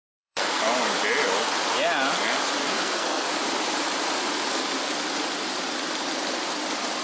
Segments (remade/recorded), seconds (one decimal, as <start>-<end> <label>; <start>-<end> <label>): 0.0-0.6 remade; 0.6-2.6 recorded; 2.6-3.3 remade; 3.3-7.0 recorded